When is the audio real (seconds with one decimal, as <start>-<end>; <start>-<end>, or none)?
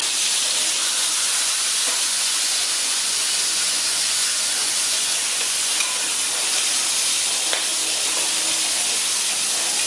0.0-0.8; 6.0-9.9